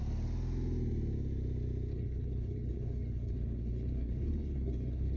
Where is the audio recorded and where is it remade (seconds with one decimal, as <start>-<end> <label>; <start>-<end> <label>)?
0.0-1.9 recorded; 1.9-5.2 remade